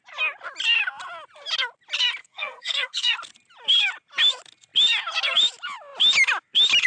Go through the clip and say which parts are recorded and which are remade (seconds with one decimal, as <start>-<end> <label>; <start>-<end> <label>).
0.0-2.2 recorded; 2.2-3.1 remade; 3.1-6.9 recorded